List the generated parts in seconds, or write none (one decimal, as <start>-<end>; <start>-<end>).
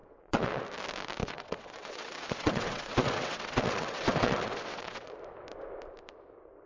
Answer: 0.0-0.6; 1.2-5.1